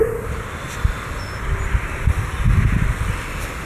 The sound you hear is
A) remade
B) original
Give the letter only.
B